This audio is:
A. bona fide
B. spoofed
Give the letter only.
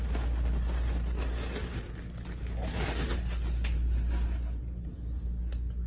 A